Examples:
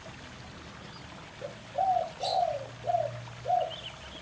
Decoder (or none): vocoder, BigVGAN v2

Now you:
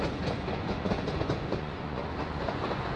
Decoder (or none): vocoder, Vocos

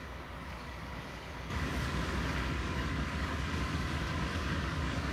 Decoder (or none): codec, DAC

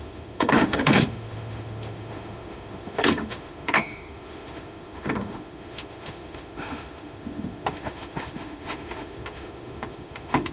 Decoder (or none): autoencoder, DAC-VAE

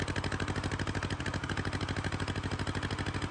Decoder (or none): none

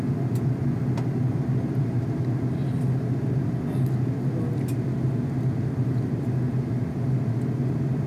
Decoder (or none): none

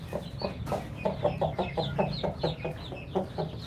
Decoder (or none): none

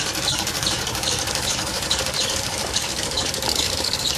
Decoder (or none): codec, DAC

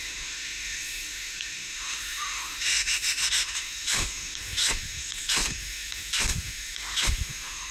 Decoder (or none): autoencoder, DAC-VAE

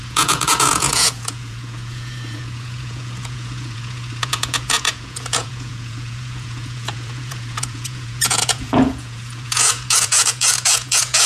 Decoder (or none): vocoder, Vocos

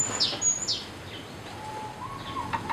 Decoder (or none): none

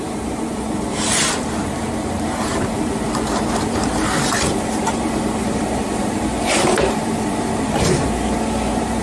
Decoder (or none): vocoder, BigVGAN v2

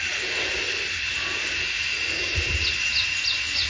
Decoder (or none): none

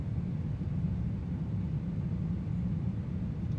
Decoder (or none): none